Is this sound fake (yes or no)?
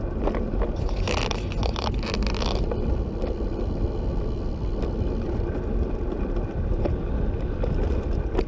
no